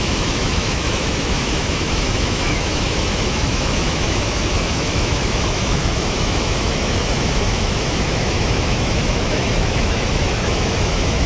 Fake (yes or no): yes